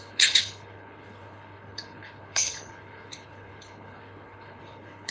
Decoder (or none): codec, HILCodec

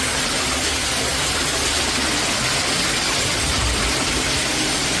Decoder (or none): none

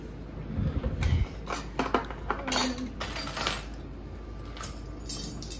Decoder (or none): none